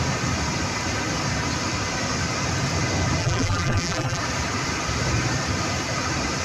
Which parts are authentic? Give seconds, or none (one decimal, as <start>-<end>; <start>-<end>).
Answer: 0.0-3.2; 4.2-6.4